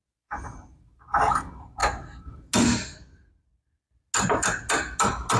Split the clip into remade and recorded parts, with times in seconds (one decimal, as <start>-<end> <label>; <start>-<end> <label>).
0.0-5.4 recorded